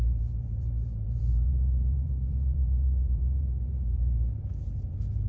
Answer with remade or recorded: remade